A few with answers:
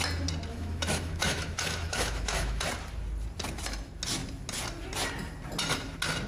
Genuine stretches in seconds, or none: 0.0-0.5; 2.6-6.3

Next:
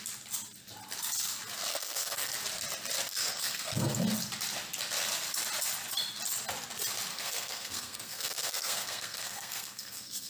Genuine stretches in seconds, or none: 0.0-1.7; 2.3-3.1; 4.0-7.1

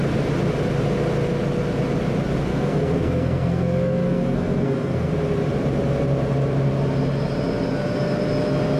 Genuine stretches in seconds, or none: 0.0-2.5; 5.1-8.8

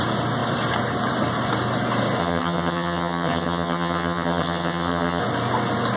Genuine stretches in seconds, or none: 0.0-2.2; 5.2-6.0

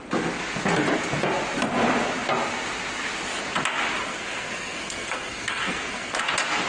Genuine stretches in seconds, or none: 0.0-4.0; 6.2-6.7